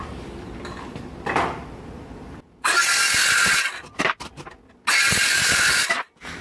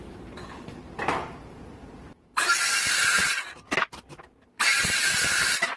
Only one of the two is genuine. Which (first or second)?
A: first